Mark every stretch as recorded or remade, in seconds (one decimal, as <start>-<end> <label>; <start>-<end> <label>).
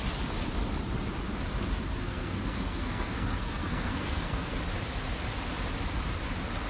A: 0.0-2.0 recorded; 2.0-4.6 remade; 4.6-6.7 recorded